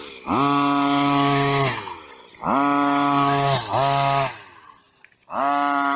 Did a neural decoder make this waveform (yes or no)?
no